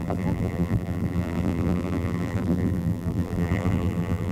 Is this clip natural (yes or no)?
no